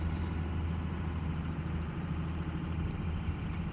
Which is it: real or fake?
real